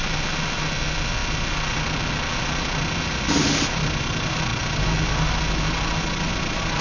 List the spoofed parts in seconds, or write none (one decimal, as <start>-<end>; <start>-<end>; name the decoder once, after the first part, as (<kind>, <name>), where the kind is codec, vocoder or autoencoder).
none